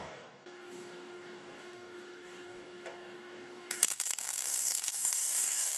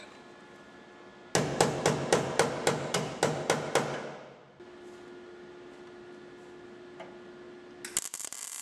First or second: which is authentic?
second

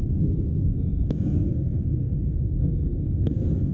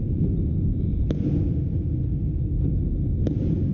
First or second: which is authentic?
second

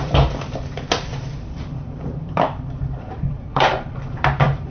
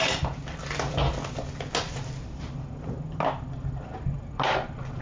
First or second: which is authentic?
second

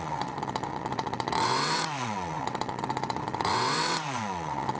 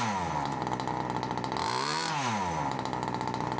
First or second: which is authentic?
second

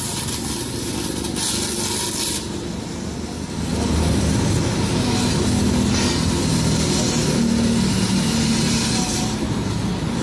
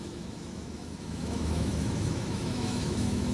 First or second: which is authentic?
first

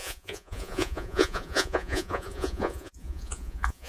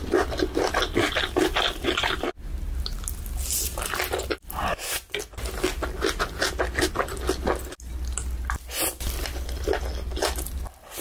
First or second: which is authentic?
second